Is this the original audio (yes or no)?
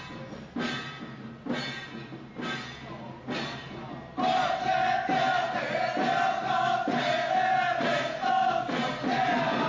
yes